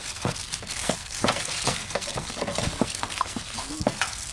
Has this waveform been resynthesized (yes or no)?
yes